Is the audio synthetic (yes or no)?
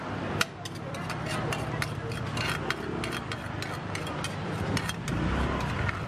no